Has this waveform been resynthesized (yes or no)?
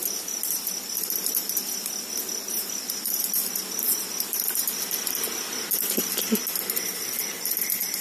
no